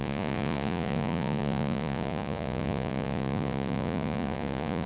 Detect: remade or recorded remade